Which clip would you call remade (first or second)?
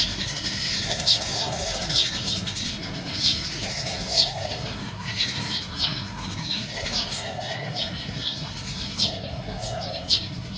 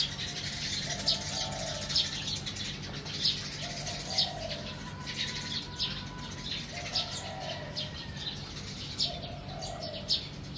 first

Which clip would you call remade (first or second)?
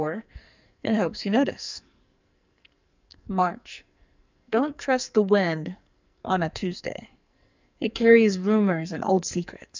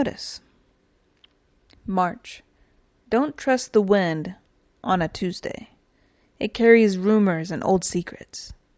first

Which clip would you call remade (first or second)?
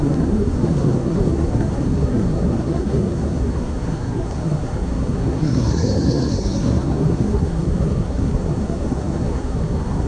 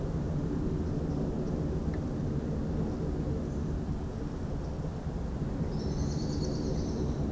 first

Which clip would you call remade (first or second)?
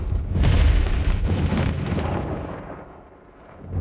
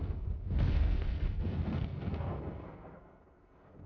second